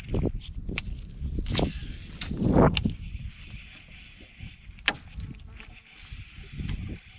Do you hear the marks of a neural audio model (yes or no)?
no